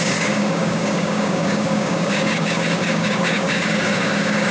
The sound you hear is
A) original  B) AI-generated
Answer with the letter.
B